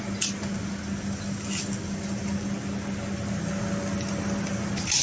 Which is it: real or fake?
real